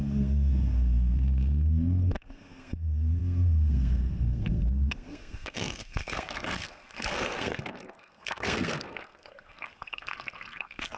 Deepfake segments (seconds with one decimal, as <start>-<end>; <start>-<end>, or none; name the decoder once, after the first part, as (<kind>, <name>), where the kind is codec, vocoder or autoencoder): 0.0-11.0 (codec, SNAC)

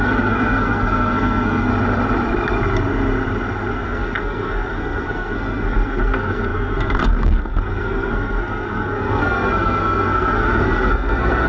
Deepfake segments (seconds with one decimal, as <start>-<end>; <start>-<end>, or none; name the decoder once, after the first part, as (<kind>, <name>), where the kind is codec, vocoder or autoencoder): 0.0-1.7 (codec, SNAC); 3.7-11.5